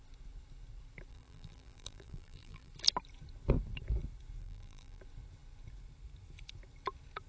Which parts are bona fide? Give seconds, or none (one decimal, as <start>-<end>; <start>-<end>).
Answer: 0.0-1.1; 2.7-4.4; 5.0-7.3